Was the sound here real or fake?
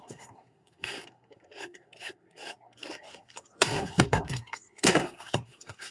fake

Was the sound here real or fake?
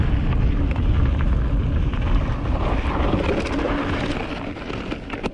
real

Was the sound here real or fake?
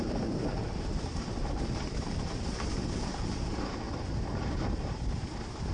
fake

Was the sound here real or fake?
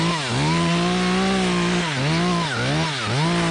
real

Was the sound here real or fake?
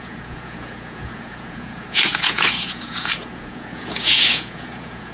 fake